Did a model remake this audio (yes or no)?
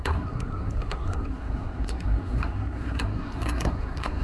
yes